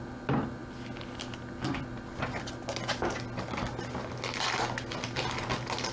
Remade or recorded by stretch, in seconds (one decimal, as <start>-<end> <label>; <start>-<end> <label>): 0.0-5.9 recorded